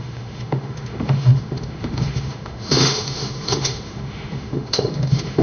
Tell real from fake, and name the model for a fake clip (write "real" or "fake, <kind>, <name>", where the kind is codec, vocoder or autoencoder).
fake, autoencoder, DAC-VAE